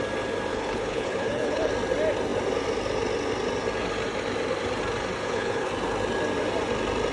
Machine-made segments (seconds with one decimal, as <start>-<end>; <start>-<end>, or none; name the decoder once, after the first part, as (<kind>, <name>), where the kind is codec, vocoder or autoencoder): 0.5-1.7 (codec, HILCodec); 5.2-5.7